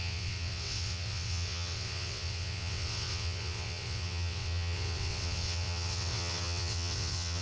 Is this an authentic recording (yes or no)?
no